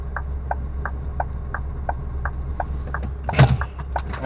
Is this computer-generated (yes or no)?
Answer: no